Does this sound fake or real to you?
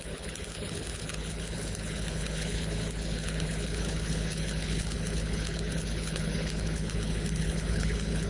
fake